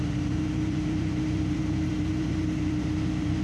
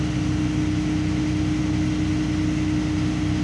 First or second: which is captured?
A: second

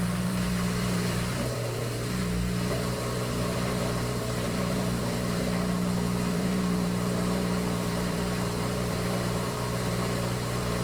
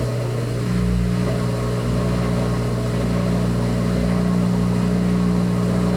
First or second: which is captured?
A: second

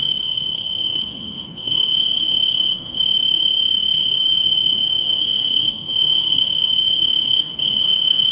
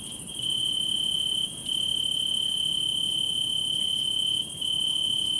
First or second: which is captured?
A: second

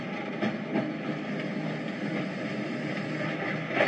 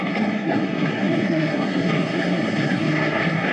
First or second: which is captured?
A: first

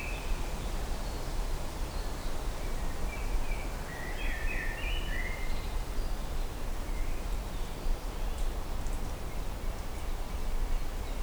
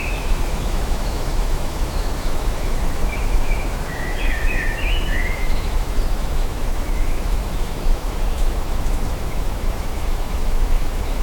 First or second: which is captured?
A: first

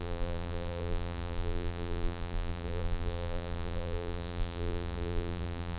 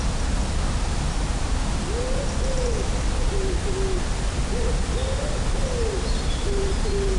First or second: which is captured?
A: second